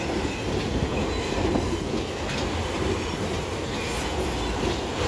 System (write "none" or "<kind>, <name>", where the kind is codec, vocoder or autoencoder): none